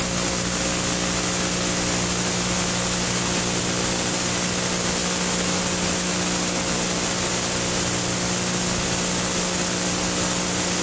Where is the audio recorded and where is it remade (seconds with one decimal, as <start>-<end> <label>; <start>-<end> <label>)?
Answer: 0.0-10.8 recorded